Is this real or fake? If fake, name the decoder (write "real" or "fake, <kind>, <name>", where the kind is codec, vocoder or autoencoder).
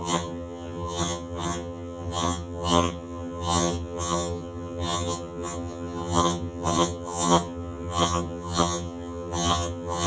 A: fake, vocoder, HiFi-GAN